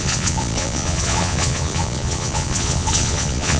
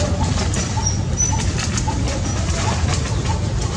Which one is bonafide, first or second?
second